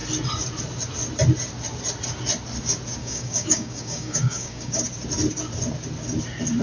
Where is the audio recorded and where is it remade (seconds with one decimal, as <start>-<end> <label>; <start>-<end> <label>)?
0.0-3.0 recorded; 3.0-4.8 remade; 4.8-6.6 recorded